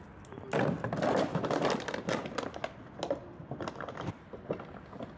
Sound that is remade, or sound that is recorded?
recorded